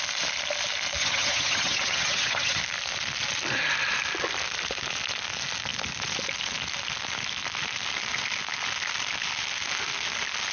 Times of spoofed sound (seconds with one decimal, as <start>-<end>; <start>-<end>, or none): 1.0-2.6